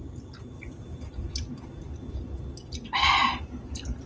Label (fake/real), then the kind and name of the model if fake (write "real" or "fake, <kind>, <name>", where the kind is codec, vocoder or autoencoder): real